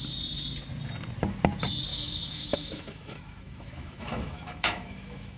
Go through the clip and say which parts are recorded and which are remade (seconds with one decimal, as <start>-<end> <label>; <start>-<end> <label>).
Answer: 0.0-1.9 recorded; 1.9-5.4 remade